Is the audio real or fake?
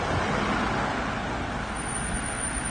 real